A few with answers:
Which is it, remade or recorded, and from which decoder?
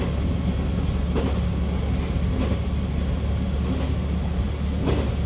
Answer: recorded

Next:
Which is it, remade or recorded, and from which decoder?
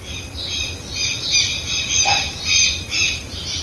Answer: recorded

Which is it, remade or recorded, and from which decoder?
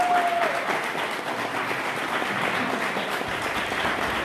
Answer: recorded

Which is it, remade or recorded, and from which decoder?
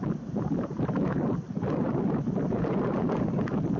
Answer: recorded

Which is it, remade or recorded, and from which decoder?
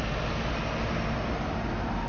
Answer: recorded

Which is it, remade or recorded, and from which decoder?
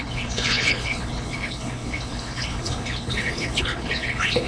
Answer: remade, codec, HILCodec